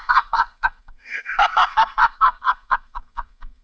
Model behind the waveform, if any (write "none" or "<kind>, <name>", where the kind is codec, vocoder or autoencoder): codec, SNAC